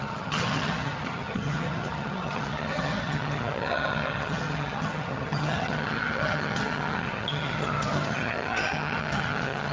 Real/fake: fake